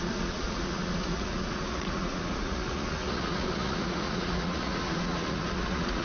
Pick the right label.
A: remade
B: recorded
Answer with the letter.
A